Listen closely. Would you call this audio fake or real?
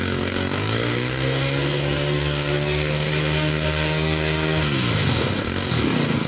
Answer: fake